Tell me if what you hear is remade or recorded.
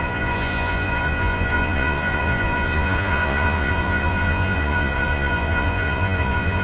remade